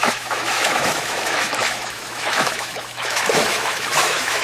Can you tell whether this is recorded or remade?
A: remade